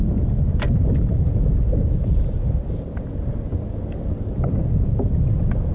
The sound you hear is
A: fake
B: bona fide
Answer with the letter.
B